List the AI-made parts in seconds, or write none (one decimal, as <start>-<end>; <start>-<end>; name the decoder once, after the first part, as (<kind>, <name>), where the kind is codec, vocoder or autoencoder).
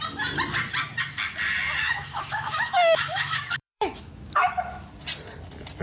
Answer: 1.8-4.9 (autoencoder, DAC-VAE)